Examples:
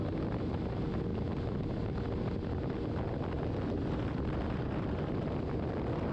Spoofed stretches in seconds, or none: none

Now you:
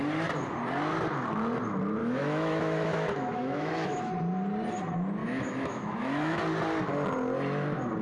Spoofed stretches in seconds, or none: 2.0-4.1 (autoencoder, DAC-VAE); 5.2-6.4

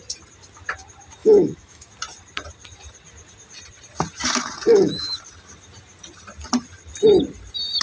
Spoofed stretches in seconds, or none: 1.2-1.9 (autoencoder, DAC-VAE); 4.7-5.2

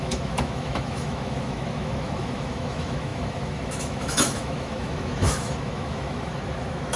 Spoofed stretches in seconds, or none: 0.0-7.0 (autoencoder, DAC-VAE)

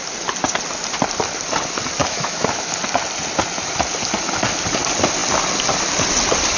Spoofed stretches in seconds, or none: 2.0-2.8 (autoencoder, DAC-VAE)

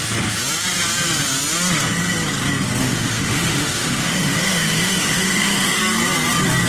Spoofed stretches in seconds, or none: 2.8-5.8 (autoencoder, DAC-VAE)

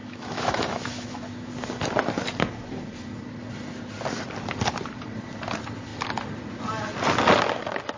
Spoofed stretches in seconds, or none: 0.0-1.5 (autoencoder, DAC-VAE)